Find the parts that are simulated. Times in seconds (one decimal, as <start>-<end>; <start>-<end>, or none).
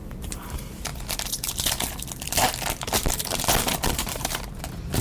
0.0-0.9; 3.9-5.0